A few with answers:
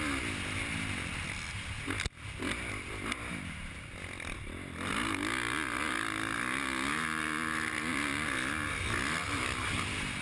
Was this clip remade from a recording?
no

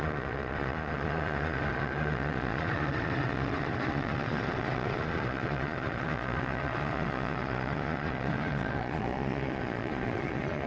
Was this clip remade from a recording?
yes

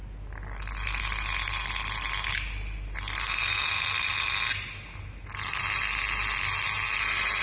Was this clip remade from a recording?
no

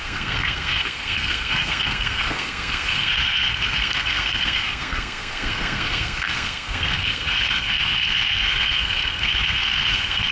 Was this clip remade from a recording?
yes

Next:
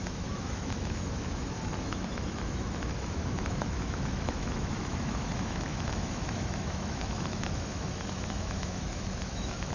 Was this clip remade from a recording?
yes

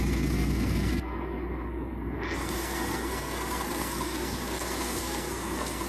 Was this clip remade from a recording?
yes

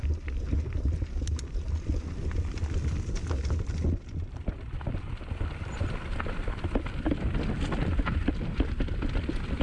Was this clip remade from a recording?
no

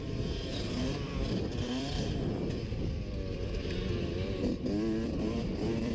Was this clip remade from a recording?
yes